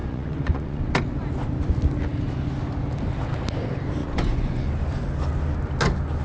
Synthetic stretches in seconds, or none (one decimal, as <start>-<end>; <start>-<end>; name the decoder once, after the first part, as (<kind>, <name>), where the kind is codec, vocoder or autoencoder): 0.0-0.9 (vocoder, Vocos); 4.0-4.7